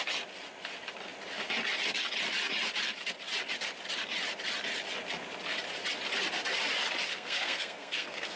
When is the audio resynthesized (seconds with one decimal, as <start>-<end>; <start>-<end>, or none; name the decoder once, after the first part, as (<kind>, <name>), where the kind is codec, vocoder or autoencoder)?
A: 7.1-8.4 (codec, SNAC)